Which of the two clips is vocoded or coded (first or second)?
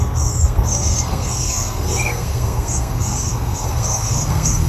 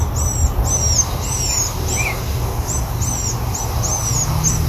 first